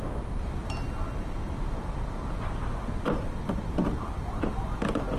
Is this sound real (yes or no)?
yes